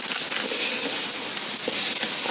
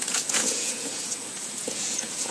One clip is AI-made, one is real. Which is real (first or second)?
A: first